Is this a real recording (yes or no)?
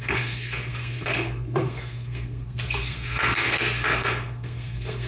no